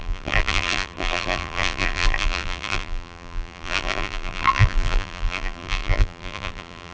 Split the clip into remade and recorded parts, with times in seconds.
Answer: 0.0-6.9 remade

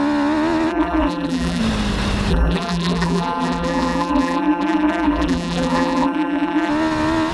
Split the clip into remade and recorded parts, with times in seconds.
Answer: 0.0-0.7 recorded; 0.7-1.6 remade; 1.6-2.3 recorded; 2.3-6.7 remade; 6.7-7.3 recorded

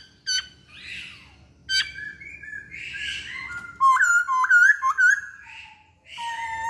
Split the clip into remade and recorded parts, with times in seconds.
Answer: 0.0-6.7 recorded

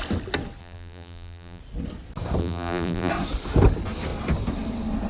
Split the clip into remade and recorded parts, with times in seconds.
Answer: 0.0-0.6 recorded; 0.6-1.6 remade; 1.6-2.4 recorded; 2.4-3.1 remade; 3.1-5.1 recorded